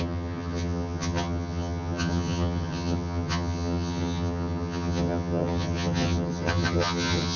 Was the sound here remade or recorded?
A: remade